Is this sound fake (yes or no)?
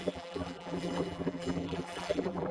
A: yes